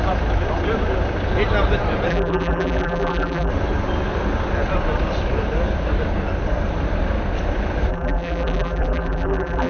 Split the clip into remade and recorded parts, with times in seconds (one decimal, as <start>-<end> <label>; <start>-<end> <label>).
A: 0.0-2.1 recorded; 2.1-3.5 remade; 3.5-7.9 recorded; 7.9-9.7 remade